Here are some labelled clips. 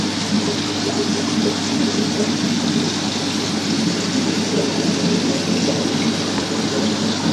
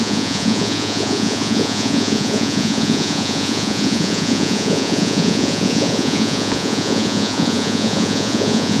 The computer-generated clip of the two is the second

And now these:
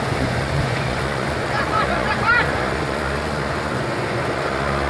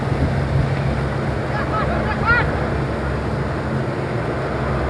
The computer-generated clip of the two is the first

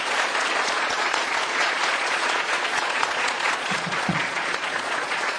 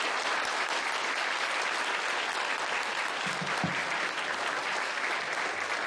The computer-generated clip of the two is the first